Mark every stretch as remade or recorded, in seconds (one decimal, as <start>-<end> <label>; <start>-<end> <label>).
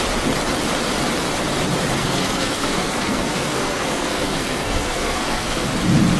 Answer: 0.0-2.0 recorded; 2.0-5.7 remade; 5.7-6.2 recorded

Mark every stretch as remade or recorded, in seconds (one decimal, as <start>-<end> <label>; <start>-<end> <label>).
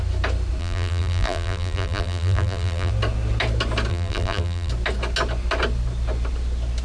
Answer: 0.0-0.6 recorded; 0.6-2.9 remade; 2.9-3.9 recorded; 3.9-4.7 remade; 4.7-6.8 recorded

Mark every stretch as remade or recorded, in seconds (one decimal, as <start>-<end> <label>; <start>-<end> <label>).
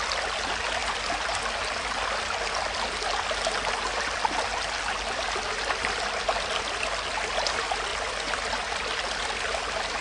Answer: 0.0-7.9 recorded; 7.9-10.0 remade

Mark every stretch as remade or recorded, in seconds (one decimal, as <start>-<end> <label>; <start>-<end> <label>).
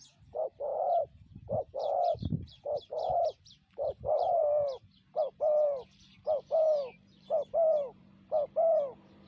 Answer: 0.0-9.3 remade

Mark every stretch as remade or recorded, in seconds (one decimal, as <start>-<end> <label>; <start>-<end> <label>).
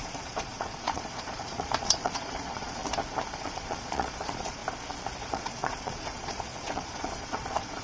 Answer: 0.0-2.8 remade; 2.8-3.3 recorded; 3.3-4.6 remade; 4.6-5.2 recorded; 5.2-7.8 remade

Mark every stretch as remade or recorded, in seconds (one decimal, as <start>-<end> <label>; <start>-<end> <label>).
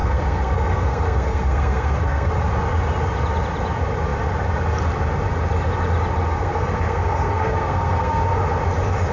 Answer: 0.0-2.3 remade; 2.3-6.3 recorded; 6.3-8.2 remade; 8.2-9.1 recorded